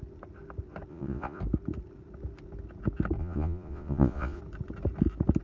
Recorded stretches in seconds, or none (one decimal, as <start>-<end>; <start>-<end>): 0.0-0.9; 1.4-3.2; 4.4-5.4